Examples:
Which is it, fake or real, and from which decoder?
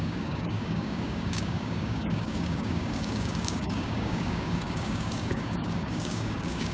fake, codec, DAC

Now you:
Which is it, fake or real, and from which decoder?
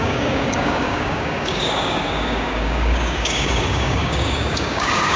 fake, codec, DAC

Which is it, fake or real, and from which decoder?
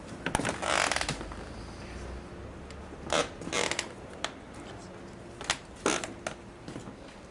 real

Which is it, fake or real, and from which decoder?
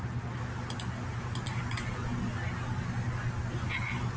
real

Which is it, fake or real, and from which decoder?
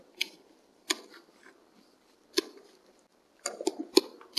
real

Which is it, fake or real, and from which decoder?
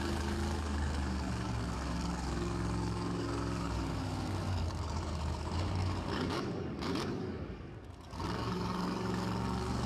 fake, codec, DAC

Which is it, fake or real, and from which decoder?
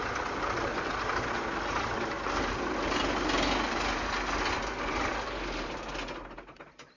real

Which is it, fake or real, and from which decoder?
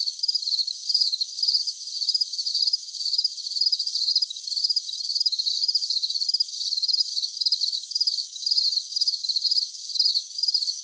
fake, codec, DAC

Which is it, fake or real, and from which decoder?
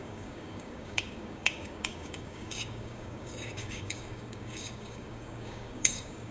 fake, codec, DAC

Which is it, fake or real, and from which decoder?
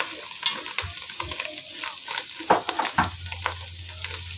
real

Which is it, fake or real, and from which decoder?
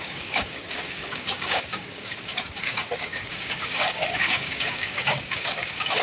fake, codec, DAC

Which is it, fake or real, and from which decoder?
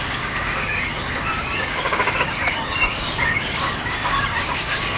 fake, codec, DAC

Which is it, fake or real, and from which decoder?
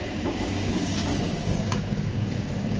fake, codec, DAC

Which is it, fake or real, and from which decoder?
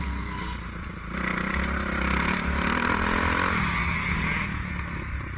real